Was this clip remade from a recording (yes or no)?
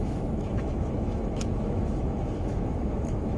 yes